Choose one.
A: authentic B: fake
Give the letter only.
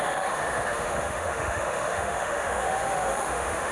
B